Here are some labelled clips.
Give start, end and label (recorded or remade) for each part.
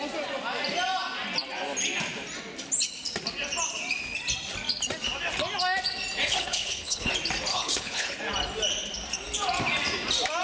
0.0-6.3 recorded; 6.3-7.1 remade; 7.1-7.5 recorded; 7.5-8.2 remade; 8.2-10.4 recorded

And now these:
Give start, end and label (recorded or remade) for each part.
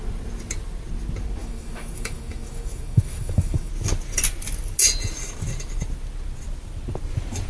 0.0-1.4 recorded; 1.4-3.7 remade; 3.7-7.5 recorded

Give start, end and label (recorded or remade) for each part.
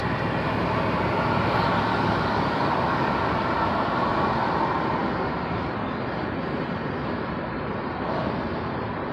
0.0-1.9 recorded; 1.9-3.1 remade; 3.1-9.1 recorded